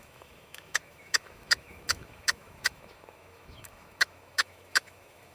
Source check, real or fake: fake